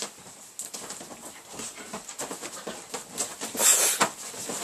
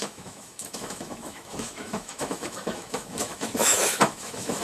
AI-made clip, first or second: second